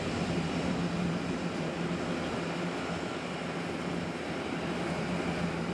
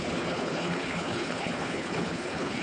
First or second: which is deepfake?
second